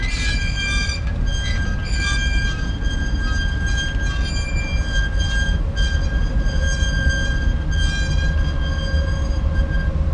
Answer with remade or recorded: recorded